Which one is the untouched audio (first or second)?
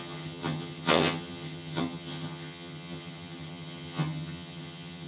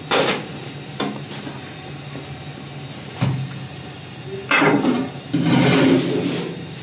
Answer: second